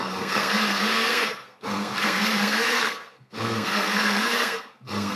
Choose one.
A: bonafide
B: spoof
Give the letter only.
B